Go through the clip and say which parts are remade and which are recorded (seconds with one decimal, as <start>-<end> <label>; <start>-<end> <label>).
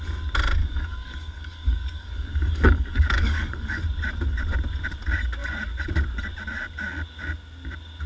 0.0-0.6 recorded; 0.6-3.8 remade; 3.8-8.1 recorded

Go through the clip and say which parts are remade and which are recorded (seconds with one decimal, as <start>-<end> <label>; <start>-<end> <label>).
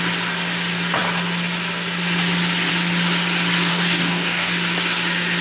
0.0-3.7 recorded; 3.7-4.5 remade; 4.5-5.4 recorded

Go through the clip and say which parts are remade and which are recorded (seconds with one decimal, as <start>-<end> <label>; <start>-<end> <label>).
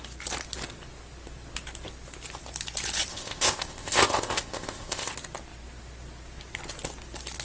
0.0-3.1 recorded; 3.1-5.1 remade; 5.1-7.4 recorded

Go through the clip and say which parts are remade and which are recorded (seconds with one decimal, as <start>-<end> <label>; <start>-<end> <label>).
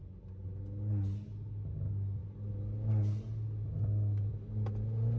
0.0-5.2 recorded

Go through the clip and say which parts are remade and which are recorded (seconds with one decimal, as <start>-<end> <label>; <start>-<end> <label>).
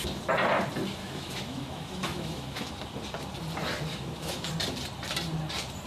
0.0-1.0 recorded; 1.0-2.7 remade; 2.7-3.9 recorded; 3.9-4.5 remade; 4.5-5.9 recorded